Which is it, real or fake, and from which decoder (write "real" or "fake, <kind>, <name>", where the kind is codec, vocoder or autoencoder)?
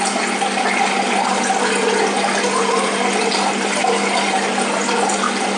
real